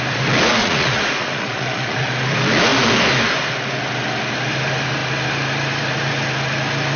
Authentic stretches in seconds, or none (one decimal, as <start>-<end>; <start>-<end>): 0.0-0.6; 2.1-7.0

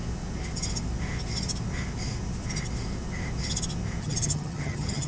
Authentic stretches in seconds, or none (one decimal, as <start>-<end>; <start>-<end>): 0.0-4.0